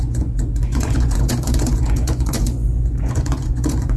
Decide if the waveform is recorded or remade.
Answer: remade